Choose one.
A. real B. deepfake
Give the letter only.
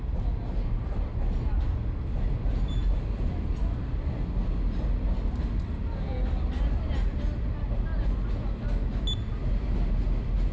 A